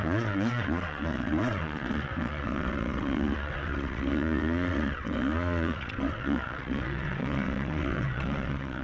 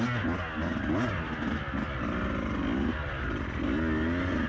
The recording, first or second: second